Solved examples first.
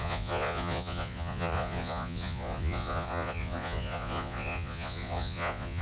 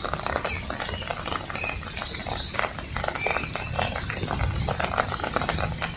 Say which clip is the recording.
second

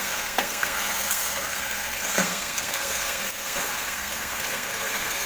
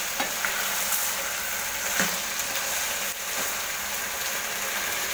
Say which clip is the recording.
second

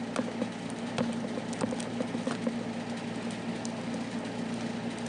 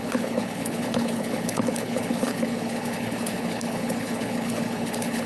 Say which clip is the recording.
first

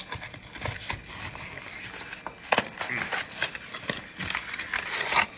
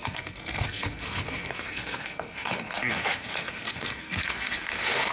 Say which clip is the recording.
first